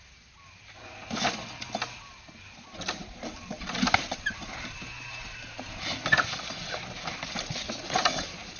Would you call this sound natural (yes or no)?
yes